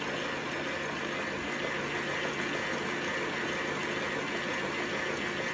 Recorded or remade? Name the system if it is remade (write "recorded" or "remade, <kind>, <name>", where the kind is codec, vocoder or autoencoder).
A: recorded